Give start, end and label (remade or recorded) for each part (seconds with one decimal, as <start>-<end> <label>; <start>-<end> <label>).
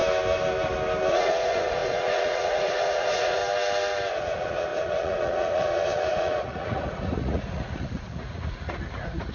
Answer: 0.0-1.1 recorded; 1.1-3.4 remade; 3.4-4.1 recorded; 4.1-9.3 remade